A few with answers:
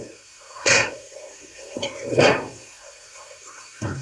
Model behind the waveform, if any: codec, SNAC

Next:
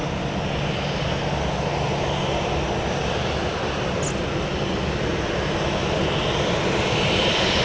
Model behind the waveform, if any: none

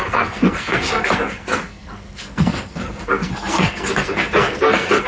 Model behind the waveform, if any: codec, SNAC